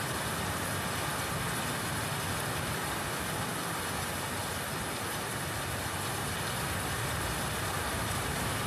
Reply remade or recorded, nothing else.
recorded